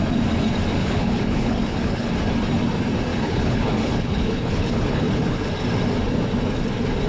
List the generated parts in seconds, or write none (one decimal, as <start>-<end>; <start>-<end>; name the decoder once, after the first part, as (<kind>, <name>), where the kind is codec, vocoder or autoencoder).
0.8-2.1 (codec, HILCodec); 3.1-5.5